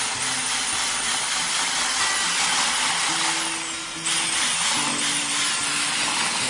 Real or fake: real